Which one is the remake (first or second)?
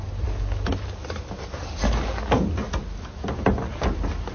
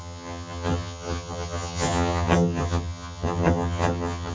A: second